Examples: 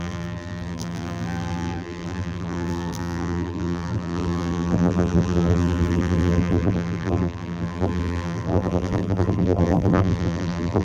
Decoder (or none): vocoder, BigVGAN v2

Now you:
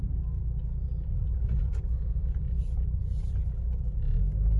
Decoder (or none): none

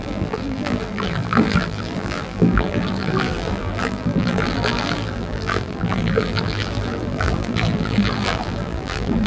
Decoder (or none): vocoder, BigVGAN v2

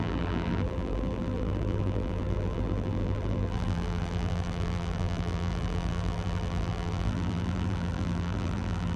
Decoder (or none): vocoder, BigVGAN v2